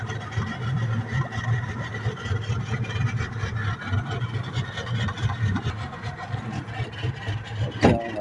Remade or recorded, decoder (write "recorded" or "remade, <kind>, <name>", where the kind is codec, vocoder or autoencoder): recorded